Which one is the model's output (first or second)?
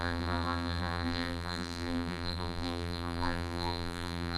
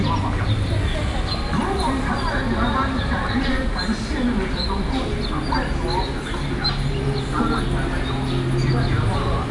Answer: first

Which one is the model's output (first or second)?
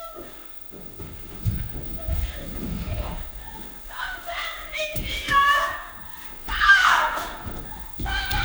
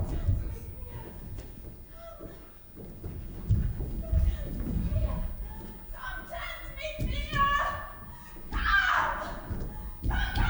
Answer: first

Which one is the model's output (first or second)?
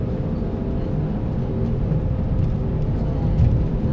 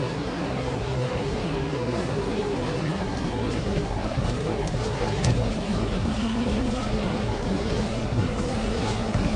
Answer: second